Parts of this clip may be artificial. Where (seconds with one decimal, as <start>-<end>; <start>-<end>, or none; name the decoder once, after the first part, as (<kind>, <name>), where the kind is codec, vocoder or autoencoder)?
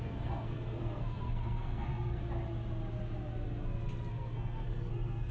0.0-2.2 (codec, SNAC); 4.1-5.3